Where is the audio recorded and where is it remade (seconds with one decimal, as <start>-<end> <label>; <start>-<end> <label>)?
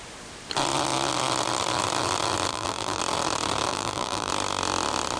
0.0-2.5 recorded; 2.5-3.0 remade; 3.0-3.7 recorded; 3.7-4.3 remade; 4.3-5.2 recorded